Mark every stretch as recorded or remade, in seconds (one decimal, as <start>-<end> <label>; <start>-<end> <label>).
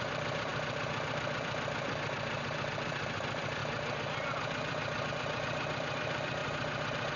0.0-6.4 remade; 6.4-7.2 recorded